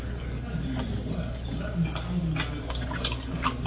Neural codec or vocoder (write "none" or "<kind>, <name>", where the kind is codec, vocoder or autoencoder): none